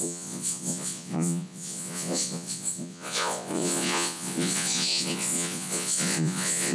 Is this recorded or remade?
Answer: remade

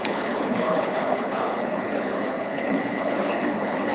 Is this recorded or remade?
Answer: remade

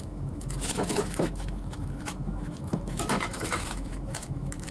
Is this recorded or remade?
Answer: remade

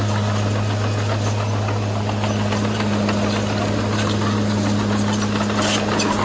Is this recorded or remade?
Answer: recorded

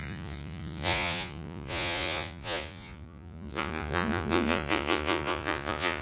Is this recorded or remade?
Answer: remade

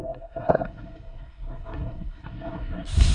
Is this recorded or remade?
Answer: remade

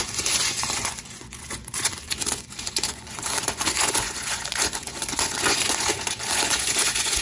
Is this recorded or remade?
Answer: remade